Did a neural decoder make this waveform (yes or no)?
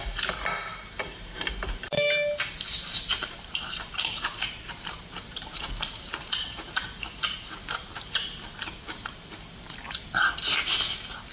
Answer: yes